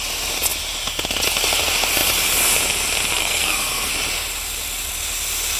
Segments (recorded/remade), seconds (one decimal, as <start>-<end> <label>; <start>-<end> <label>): 0.0-3.2 recorded; 3.2-3.9 remade; 3.9-5.6 recorded